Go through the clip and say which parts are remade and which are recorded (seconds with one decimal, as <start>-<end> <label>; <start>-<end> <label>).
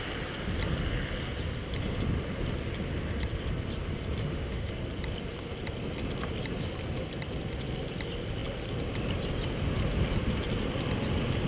0.0-4.2 recorded; 4.2-4.7 remade; 4.7-11.5 recorded